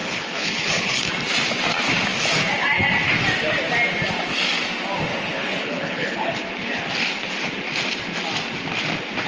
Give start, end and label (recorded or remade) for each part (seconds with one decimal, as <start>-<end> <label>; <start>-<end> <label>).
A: 0.0-1.1 remade; 1.1-5.1 recorded; 5.1-6.3 remade; 6.3-9.3 recorded